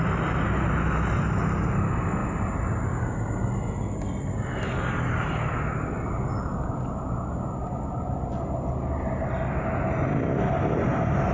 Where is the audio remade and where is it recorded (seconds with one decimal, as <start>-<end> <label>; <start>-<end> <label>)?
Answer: 0.0-11.3 recorded